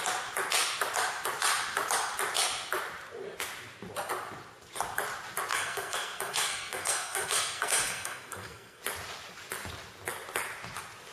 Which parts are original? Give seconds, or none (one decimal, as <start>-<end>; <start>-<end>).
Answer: 0.0-5.5; 8.8-11.1